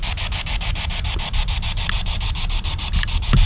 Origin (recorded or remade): recorded